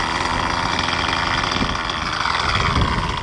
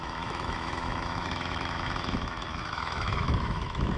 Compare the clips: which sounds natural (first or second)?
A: first